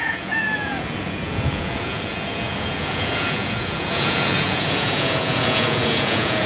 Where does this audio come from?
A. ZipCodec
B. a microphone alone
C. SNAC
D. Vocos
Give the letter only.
D